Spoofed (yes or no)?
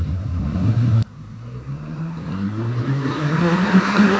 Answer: yes